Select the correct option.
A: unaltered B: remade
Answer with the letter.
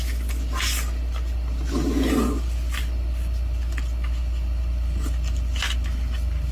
A